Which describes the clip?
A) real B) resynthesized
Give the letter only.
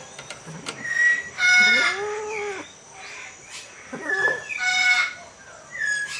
A